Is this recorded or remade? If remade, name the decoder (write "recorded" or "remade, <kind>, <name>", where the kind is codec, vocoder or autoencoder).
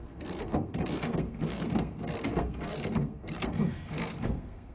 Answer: remade, codec, SNAC